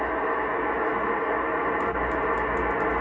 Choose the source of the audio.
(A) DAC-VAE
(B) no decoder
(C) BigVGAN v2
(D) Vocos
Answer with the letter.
B